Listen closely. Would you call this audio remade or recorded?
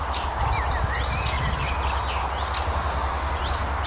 recorded